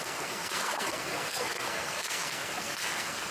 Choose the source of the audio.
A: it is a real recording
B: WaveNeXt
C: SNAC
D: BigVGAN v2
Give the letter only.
C